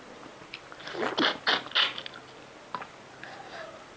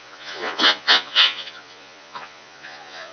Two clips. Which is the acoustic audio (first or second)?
first